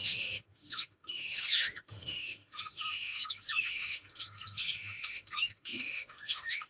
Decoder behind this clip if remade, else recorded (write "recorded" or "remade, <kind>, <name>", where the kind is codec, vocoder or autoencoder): remade, autoencoder, DAC-VAE